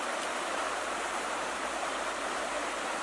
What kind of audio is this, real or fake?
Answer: fake